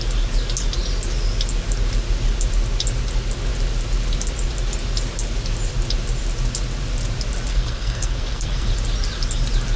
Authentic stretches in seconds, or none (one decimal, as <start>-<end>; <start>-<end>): 0.0-7.5; 8.7-9.8

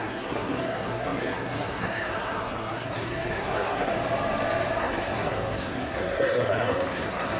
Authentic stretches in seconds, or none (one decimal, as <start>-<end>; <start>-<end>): 3.9-4.8